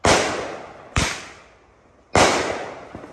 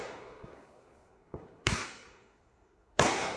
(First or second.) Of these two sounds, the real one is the first